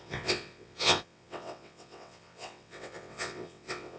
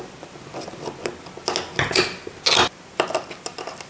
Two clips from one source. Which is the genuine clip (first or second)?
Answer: second